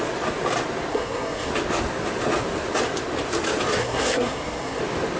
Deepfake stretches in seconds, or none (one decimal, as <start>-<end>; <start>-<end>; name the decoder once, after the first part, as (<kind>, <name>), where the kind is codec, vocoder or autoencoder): 0.9-1.5 (codec, SNAC); 3.8-4.8